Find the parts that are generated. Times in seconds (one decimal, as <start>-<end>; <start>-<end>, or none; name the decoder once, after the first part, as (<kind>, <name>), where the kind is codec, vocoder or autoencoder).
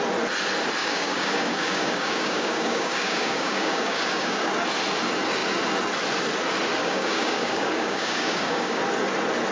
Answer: 0.8-4.5 (codec, DAC); 6.8-8.8